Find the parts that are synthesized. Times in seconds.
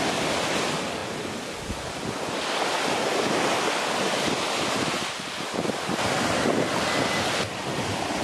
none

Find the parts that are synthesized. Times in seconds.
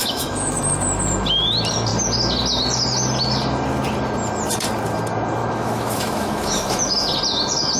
0.0-0.6 (autoencoder, DAC-VAE); 5.4-6.8